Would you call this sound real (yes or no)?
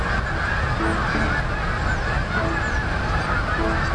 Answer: yes